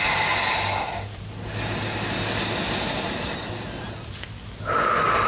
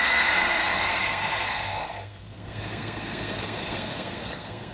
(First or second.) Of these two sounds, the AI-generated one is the second